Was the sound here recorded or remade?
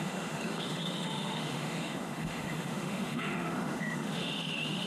remade